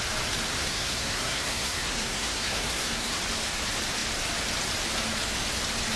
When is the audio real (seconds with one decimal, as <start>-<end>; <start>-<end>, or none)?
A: 0.0-0.6; 3.2-6.0